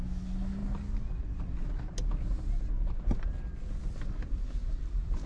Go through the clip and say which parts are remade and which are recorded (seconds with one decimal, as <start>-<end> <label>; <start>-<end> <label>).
0.0-4.2 recorded; 4.2-5.3 remade